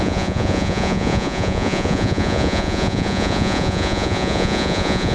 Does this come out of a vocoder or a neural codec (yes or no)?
yes